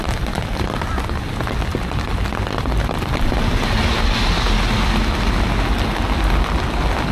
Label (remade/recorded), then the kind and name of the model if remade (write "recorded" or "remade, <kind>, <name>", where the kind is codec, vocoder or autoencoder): recorded